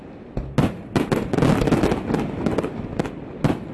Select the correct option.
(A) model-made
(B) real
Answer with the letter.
B